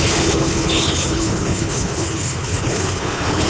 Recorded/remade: remade